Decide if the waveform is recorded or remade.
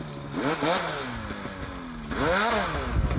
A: recorded